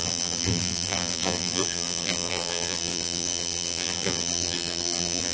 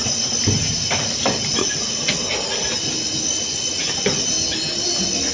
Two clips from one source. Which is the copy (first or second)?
first